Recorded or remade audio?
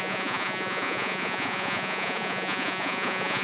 remade